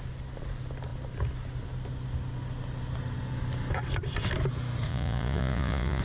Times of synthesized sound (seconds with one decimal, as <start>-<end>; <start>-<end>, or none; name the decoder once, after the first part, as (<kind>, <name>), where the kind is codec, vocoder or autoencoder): 4.9-6.0 (vocoder, Vocos)